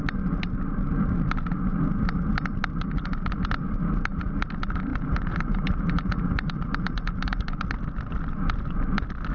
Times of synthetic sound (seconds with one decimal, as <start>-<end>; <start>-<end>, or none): 4.9-7.5